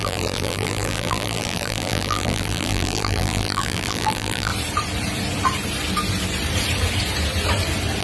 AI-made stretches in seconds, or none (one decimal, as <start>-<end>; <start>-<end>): 0.0-4.5